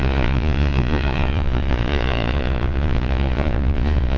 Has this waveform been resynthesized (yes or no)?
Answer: yes